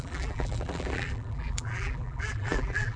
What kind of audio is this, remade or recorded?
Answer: remade